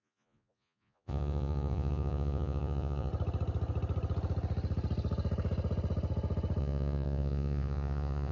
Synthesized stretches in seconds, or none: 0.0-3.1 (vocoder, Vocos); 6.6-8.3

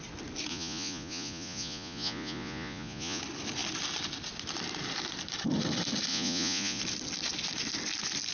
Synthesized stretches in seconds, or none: 0.5-3.2 (vocoder, Vocos); 6.1-6.8

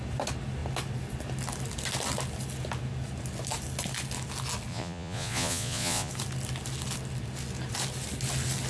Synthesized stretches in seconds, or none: 4.7-6.1 (vocoder, Vocos)

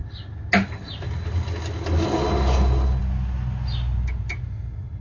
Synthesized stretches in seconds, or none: none